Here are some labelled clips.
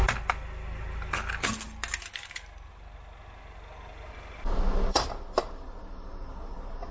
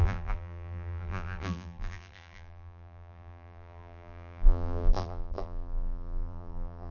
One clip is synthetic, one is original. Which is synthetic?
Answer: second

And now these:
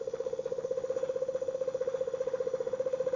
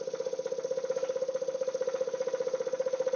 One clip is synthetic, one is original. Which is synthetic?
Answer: first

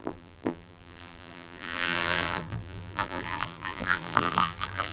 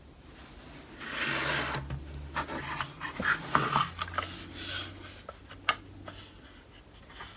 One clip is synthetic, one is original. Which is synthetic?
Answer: first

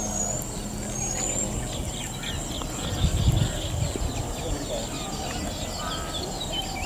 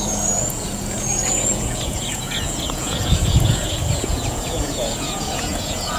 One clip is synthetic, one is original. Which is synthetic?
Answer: second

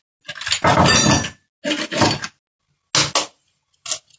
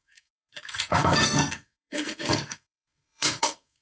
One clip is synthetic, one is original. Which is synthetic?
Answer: second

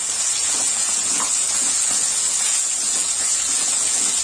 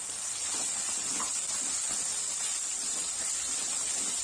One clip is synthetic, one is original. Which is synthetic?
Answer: first